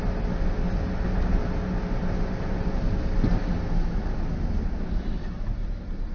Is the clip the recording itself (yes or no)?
yes